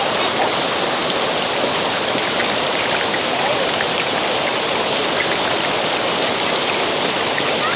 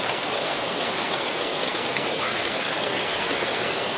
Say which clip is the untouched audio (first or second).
first